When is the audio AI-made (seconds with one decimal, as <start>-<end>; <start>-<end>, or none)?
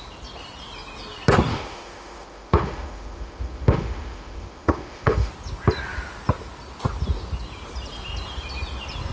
1.5-5.3